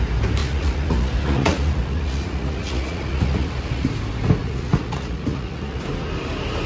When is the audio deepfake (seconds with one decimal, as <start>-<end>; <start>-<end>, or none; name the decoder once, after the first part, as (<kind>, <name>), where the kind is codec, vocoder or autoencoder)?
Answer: 0.4-3.9 (vocoder, Vocos); 4.4-5.8